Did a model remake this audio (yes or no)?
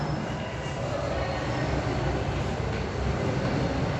yes